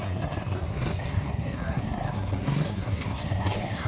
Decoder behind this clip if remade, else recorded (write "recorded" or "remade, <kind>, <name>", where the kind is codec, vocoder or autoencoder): remade, codec, SNAC